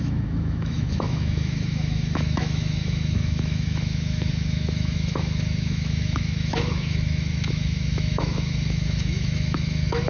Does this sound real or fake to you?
fake